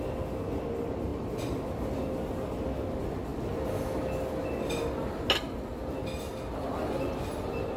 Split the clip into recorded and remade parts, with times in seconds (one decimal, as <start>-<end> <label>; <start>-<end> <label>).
0.0-7.8 recorded